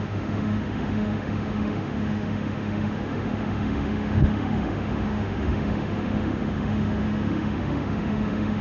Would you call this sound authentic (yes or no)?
no